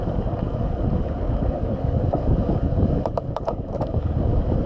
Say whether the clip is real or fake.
fake